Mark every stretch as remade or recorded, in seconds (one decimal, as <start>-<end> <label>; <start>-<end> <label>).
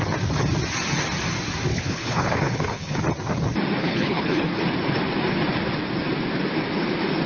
0.0-1.7 recorded; 1.7-3.0 remade; 3.0-3.8 recorded; 3.8-4.6 remade; 4.6-7.3 recorded